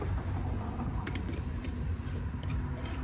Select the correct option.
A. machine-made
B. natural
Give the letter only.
A